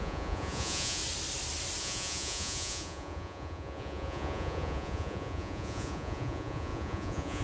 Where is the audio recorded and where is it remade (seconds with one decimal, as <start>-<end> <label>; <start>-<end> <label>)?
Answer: 0.0-1.0 remade; 1.0-1.8 recorded; 1.8-7.4 remade